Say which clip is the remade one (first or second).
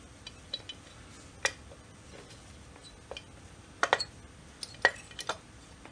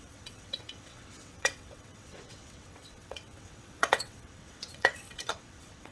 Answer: second